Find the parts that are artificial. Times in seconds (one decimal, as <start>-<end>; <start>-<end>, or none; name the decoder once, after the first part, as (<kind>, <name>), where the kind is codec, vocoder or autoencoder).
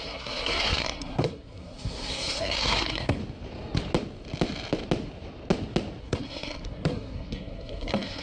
0.0-3.2 (codec, SNAC); 6.0-8.2